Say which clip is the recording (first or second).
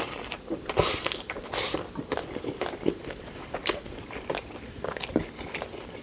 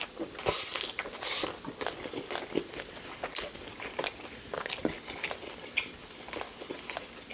second